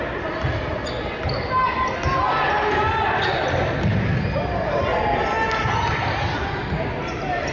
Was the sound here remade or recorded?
recorded